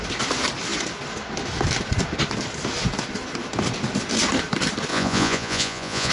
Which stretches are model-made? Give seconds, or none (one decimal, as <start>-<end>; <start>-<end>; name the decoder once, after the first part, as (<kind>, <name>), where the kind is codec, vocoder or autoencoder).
4.9-6.1 (vocoder, Vocos)